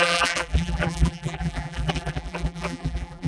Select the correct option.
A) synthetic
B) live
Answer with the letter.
A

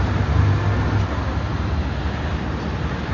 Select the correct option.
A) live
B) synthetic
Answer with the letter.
A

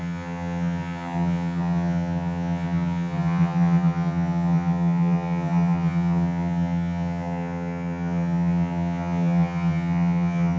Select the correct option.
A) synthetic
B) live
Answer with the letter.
A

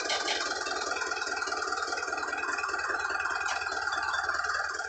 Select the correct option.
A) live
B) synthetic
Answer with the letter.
A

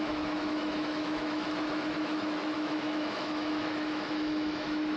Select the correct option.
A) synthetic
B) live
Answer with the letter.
A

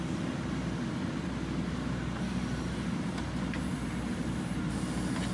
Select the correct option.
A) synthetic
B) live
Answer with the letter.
B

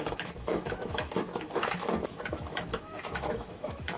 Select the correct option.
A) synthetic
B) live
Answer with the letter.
A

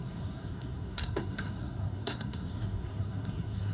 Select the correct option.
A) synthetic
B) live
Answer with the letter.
A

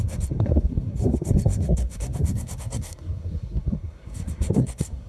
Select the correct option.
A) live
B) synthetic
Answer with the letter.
B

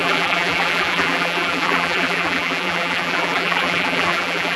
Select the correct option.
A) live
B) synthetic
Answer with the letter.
B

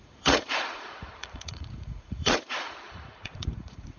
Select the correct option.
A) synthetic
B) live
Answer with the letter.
A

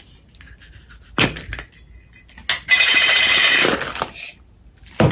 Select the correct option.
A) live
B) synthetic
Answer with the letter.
A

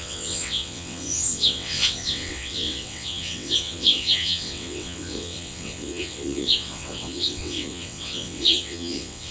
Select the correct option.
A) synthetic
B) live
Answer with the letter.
A